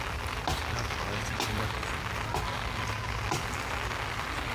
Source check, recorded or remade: recorded